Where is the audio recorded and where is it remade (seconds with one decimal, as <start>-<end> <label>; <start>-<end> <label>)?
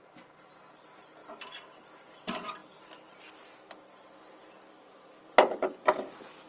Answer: 0.0-6.5 recorded